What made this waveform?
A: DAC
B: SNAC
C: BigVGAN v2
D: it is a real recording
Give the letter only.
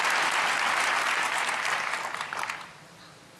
D